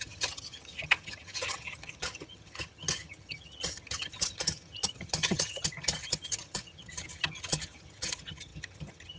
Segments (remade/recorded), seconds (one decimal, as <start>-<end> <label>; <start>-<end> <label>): 0.0-9.2 remade